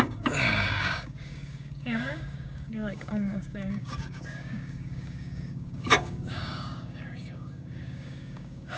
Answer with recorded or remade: remade